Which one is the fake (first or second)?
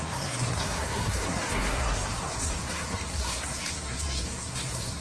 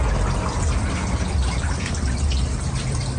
first